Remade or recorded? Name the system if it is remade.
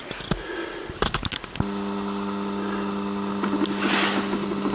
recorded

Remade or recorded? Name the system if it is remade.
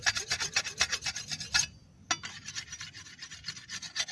recorded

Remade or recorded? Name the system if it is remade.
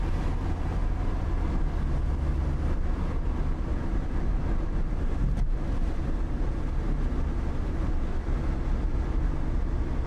recorded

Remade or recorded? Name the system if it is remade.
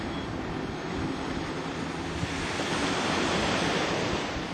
recorded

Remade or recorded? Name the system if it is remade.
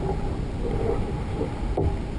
recorded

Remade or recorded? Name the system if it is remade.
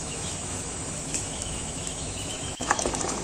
remade, autoencoder, DAC-VAE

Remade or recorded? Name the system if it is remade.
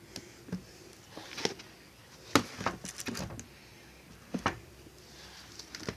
recorded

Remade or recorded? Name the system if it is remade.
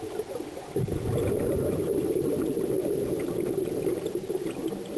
recorded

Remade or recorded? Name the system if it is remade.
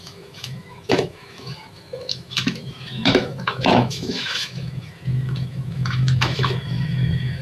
remade, autoencoder, DAC-VAE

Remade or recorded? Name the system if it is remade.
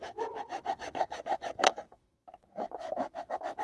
remade, autoencoder, DAC-VAE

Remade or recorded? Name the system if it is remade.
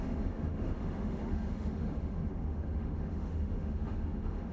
remade, autoencoder, DAC-VAE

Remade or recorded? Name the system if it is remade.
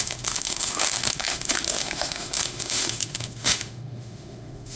remade, autoencoder, DAC-VAE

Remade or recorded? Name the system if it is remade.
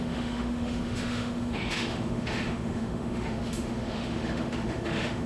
remade, autoencoder, DAC-VAE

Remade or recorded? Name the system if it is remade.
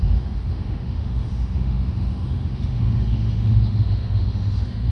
remade, autoencoder, DAC-VAE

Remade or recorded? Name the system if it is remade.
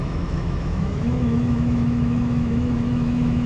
remade, autoencoder, DAC-VAE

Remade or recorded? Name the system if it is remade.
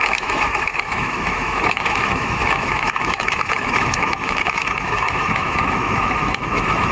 remade, autoencoder, DAC-VAE